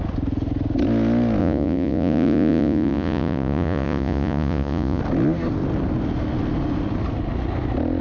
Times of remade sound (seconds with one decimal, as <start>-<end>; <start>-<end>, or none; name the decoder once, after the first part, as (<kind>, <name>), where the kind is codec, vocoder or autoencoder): 1.4-5.0 (vocoder, Vocos)